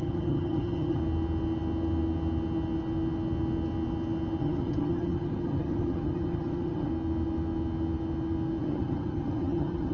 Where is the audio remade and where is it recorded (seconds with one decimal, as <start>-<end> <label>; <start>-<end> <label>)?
0.0-1.0 remade; 1.0-4.4 recorded; 4.4-6.9 remade; 6.9-8.6 recorded; 8.6-9.9 remade